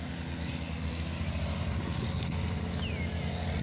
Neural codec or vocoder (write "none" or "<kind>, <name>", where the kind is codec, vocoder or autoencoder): none